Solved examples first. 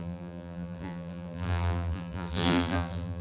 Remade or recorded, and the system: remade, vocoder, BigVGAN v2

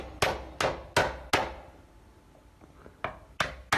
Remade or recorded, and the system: recorded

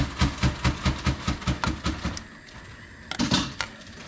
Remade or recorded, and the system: recorded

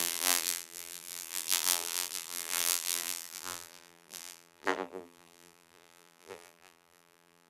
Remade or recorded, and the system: remade, vocoder, BigVGAN v2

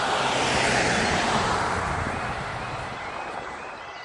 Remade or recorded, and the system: remade, vocoder, BigVGAN v2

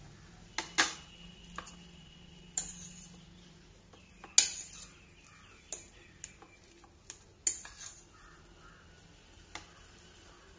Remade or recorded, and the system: recorded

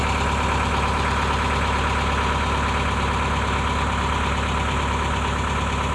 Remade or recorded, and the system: recorded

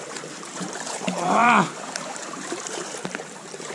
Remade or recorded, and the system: remade, vocoder, BigVGAN v2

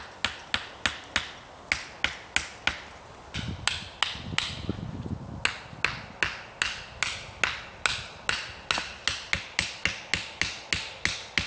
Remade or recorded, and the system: recorded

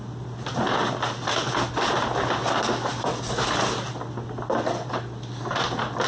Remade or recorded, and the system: recorded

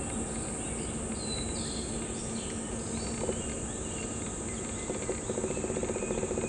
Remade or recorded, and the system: recorded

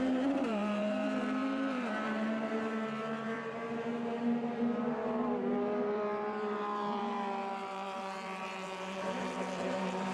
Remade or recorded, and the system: remade, vocoder, BigVGAN v2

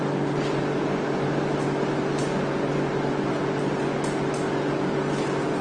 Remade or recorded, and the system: recorded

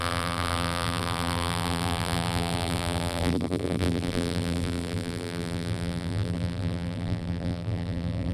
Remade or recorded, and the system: remade, vocoder, BigVGAN v2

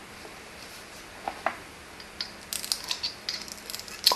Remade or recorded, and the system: recorded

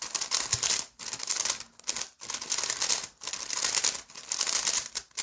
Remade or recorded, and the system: remade, vocoder, BigVGAN v2